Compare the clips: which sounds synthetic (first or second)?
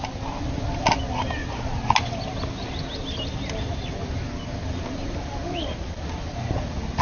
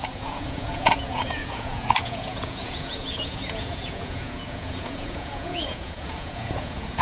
second